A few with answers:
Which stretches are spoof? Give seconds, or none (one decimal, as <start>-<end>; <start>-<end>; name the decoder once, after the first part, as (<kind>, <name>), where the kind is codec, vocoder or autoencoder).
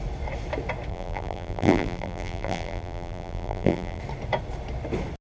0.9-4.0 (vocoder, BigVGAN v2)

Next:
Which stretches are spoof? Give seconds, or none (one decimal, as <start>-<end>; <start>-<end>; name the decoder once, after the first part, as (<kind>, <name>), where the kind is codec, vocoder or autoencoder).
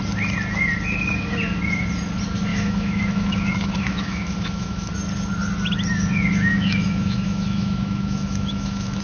2.5-4.9 (autoencoder, DAC-VAE); 6.5-9.0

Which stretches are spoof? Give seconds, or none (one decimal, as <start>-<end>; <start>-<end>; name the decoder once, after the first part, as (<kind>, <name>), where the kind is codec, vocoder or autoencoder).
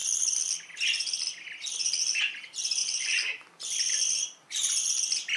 none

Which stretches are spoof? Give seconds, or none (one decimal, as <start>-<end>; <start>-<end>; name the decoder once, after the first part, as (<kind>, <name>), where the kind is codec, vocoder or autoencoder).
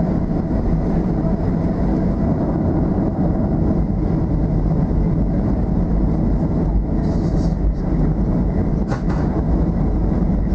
none